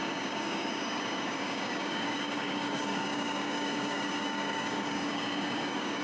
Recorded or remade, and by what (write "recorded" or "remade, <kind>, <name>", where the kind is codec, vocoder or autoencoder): remade, codec, DAC